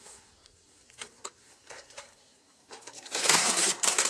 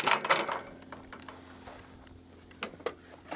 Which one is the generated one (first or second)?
first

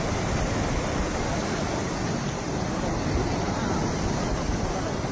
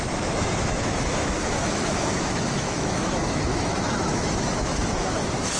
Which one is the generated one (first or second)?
second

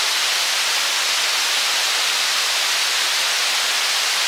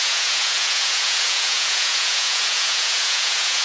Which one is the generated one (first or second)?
second